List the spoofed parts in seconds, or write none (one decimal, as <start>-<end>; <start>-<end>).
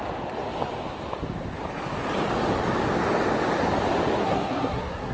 4.2-5.1